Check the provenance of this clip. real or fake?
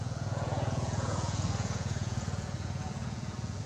fake